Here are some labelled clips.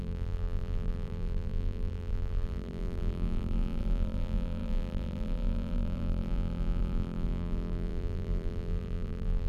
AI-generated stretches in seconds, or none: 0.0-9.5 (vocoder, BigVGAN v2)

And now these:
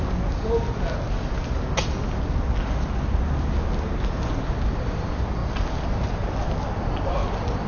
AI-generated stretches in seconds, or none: none

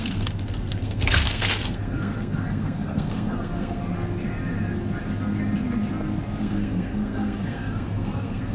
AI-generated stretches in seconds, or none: 0.0-3.8 (codec, SNAC); 6.4-8.5

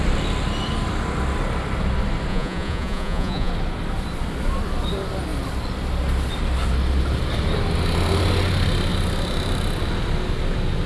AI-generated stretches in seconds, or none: 2.3-3.5 (vocoder, Vocos)